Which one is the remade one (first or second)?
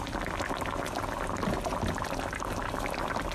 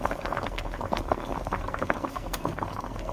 second